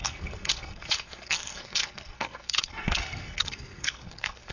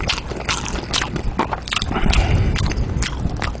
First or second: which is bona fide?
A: second